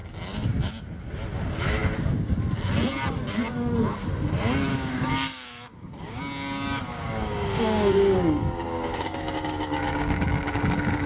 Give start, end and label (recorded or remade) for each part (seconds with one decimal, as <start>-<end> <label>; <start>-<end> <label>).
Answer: 0.0-4.7 recorded; 4.7-6.2 remade; 6.2-6.9 recorded; 6.9-11.1 remade